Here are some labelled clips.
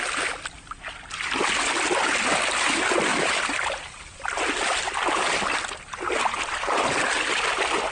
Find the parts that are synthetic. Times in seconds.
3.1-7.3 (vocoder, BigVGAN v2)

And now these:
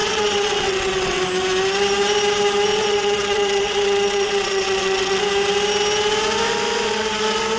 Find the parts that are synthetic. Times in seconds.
0.0-1.2 (vocoder, WaveNeXt); 2.8-5.2

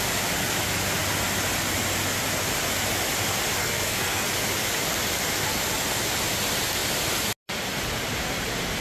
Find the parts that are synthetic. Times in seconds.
3.6-4.3 (codec, SNAC)